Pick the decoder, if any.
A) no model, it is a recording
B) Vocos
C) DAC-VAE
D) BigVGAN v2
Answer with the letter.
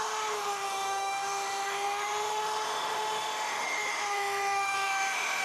C